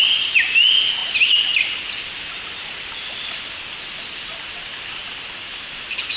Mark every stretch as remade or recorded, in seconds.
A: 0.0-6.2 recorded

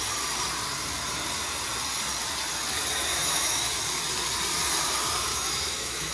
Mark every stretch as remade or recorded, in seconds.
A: 0.0-3.1 recorded; 3.1-3.8 remade; 3.8-5.3 recorded; 5.3-6.1 remade